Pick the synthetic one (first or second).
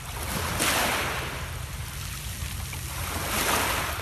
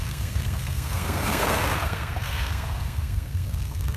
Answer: second